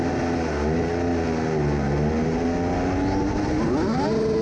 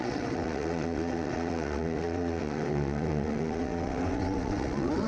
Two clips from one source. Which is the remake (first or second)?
second